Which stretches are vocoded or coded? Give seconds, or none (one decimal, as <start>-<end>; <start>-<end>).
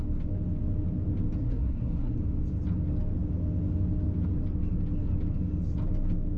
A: 1.4-2.2